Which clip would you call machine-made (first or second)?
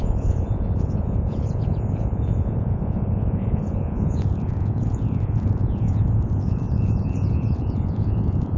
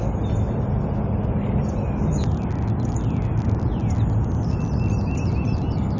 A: first